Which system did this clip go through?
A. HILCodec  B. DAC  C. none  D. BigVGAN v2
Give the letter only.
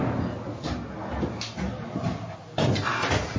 C